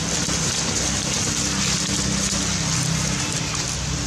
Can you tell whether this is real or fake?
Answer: real